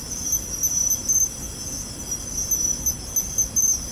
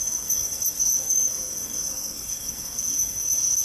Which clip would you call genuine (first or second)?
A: first